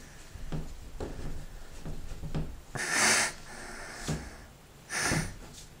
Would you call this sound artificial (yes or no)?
no